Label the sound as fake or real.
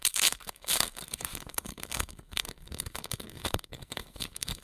fake